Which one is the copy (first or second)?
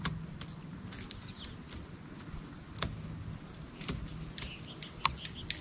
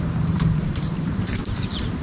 second